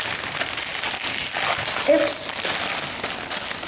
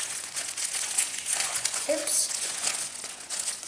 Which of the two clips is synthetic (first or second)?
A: second